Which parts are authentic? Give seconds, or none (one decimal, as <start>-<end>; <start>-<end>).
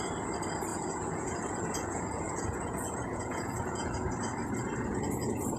0.0-0.7; 4.1-5.6